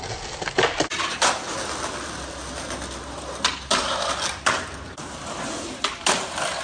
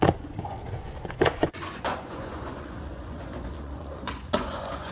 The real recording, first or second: first